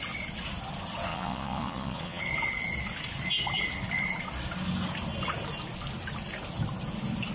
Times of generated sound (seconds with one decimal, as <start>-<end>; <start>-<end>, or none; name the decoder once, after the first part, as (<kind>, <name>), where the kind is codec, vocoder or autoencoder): 1.1-2.2 (vocoder, Vocos)